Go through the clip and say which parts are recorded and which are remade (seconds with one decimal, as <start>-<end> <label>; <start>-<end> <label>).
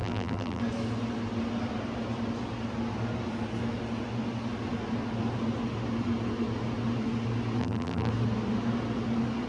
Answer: 0.0-0.6 remade; 0.6-7.6 recorded; 7.6-8.1 remade; 8.1-9.5 recorded